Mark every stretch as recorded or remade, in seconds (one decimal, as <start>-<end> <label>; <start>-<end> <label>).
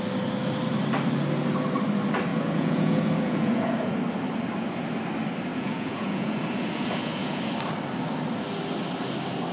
0.0-2.3 recorded; 2.3-4.0 remade; 4.0-5.5 recorded; 5.5-7.4 remade; 7.4-9.5 recorded